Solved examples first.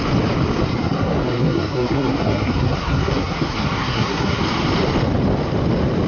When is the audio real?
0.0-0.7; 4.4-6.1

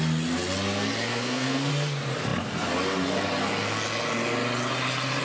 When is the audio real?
0.0-1.1; 1.7-5.2

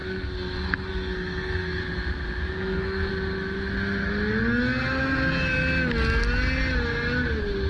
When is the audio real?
1.8-2.5; 3.1-7.7

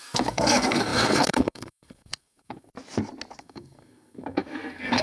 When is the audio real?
2.7-3.4